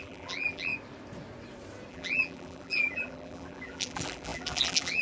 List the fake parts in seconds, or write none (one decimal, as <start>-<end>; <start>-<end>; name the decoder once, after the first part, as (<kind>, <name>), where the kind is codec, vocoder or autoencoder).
0.0-0.7 (vocoder, BigVGAN v2); 1.9-5.0